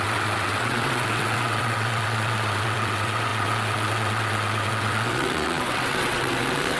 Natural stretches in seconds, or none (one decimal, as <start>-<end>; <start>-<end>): none